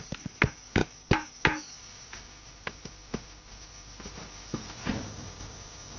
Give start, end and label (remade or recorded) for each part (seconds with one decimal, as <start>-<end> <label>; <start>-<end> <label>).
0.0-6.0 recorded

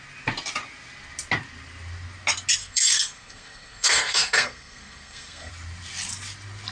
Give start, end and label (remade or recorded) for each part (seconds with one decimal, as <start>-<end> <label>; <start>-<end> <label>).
0.0-2.6 recorded; 2.6-5.5 remade; 5.5-6.7 recorded

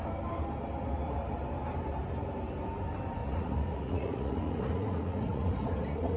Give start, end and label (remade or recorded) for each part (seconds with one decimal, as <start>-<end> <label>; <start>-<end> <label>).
0.0-3.2 recorded; 3.2-6.2 remade